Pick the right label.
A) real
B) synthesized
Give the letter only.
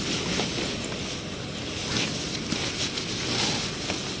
A